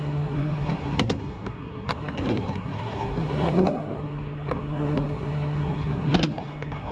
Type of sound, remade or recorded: remade